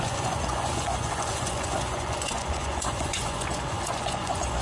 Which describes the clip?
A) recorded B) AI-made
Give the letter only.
B